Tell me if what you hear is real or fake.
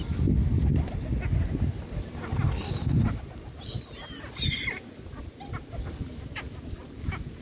real